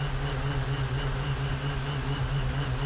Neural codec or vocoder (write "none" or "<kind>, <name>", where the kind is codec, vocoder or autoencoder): none